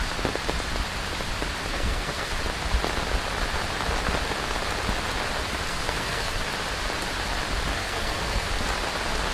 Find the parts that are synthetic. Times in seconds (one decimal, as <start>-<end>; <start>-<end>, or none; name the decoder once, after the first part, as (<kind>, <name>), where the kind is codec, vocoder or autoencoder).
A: 1.7-2.3 (codec, SNAC); 5.7-6.3; 7.7-8.5

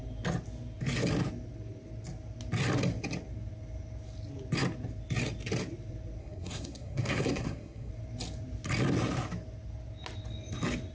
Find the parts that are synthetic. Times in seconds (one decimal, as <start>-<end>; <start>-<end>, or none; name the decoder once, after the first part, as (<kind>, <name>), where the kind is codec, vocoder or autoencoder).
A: 6.2-7.9 (codec, SNAC)

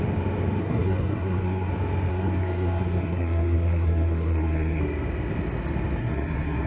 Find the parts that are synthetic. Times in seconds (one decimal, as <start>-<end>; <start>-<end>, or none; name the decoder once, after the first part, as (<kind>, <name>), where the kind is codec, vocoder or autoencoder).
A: 0.6-1.7 (codec, SNAC); 2.1-4.8; 6.0-6.7

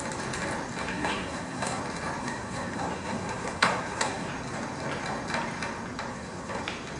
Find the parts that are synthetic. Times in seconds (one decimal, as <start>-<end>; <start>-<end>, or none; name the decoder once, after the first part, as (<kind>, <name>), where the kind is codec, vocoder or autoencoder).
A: 0.8-1.8 (codec, SNAC); 2.2-4.3; 6.1-6.6

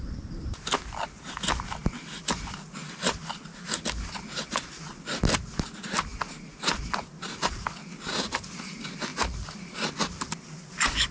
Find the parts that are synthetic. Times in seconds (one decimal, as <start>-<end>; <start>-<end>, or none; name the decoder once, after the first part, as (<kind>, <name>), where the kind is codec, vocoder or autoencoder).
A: none

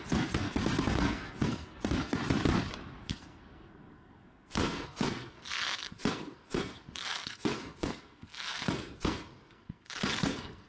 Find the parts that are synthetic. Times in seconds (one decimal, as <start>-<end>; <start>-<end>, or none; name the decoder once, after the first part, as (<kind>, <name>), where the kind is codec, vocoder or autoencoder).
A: 0.0-2.2 (codec, SNAC); 3.0-10.7

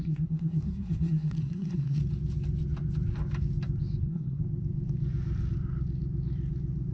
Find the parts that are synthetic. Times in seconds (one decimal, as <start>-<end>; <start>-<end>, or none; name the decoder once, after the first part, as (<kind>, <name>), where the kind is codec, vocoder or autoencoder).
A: 0.0-2.0 (codec, SNAC); 4.0-4.4